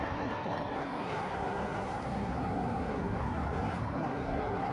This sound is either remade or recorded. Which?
remade